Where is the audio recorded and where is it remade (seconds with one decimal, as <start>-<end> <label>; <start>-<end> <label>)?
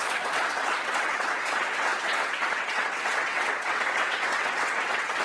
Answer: 0.0-5.2 remade